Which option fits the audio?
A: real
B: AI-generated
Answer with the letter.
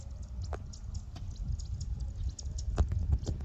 A